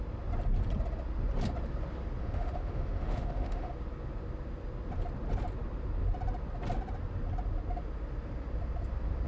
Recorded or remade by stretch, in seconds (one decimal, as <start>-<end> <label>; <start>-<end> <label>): 0.0-2.2 recorded; 2.2-3.7 remade; 3.7-9.3 recorded